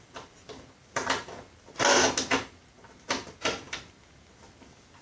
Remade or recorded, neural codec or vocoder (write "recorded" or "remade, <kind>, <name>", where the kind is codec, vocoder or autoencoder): recorded